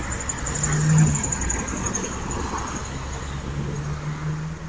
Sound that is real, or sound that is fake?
real